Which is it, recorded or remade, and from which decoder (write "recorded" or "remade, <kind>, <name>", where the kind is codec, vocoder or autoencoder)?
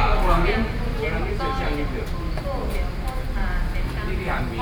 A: recorded